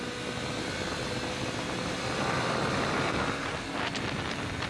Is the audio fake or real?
real